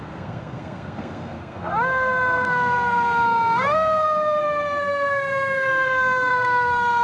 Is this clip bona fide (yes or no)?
no